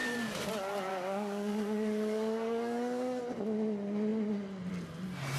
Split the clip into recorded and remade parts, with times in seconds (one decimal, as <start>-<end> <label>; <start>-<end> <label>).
0.0-0.5 remade; 0.5-0.9 recorded; 0.9-3.2 remade; 3.2-5.4 recorded